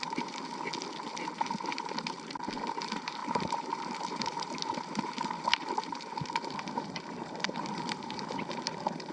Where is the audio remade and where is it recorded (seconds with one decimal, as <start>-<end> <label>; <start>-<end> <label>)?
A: 0.0-0.5 remade; 0.5-1.3 recorded; 1.3-9.1 remade